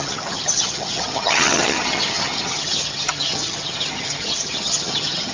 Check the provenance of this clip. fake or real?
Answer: fake